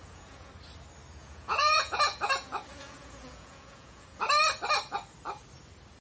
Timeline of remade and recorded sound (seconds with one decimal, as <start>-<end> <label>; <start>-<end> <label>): 0.0-0.5 remade; 0.5-1.2 recorded; 1.2-2.3 remade; 2.3-2.7 recorded; 2.7-4.2 remade; 4.2-6.0 recorded